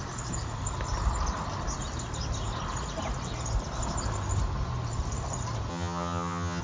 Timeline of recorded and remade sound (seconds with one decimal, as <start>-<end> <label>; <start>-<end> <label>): 0.0-5.7 recorded; 5.7-6.6 remade